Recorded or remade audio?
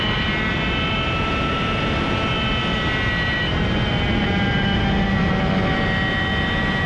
recorded